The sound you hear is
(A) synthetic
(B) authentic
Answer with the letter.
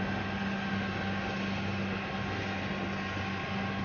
B